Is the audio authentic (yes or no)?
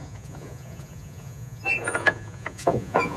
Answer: no